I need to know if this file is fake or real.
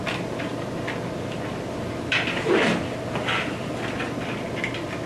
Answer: real